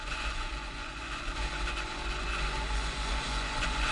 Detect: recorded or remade remade